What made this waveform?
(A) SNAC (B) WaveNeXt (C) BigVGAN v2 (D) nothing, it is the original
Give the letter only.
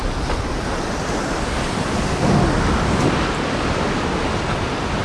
D